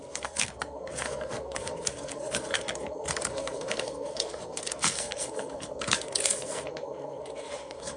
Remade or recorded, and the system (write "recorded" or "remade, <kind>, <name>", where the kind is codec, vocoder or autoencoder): remade, codec, SNAC